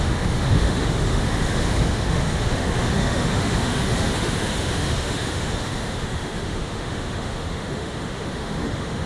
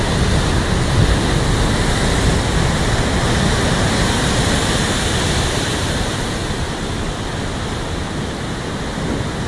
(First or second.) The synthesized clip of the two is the first